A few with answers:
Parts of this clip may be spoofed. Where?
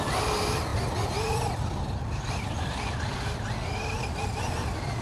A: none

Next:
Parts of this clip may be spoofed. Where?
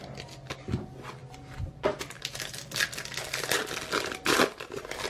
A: none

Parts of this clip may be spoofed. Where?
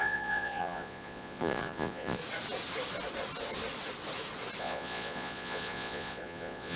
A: 0.0-2.2 (vocoder, Vocos); 4.6-6.8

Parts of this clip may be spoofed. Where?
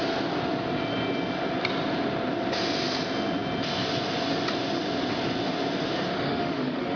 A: 6.1-7.0 (autoencoder, DAC-VAE)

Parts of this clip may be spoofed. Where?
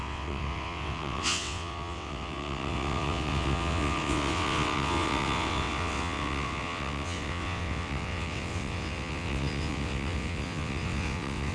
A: 0.0-11.5 (vocoder, WaveNeXt)